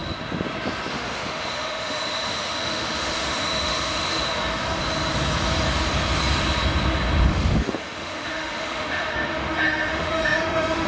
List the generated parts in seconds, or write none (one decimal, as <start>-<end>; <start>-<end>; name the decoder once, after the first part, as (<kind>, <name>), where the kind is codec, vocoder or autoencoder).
0.9-4.4 (autoencoder, DAC-VAE); 7.3-10.9